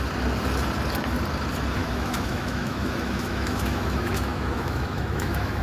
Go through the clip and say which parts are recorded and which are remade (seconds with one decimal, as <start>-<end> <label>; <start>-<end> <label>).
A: 0.0-1.8 recorded; 1.8-5.6 remade